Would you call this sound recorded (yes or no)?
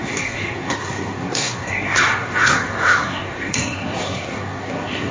no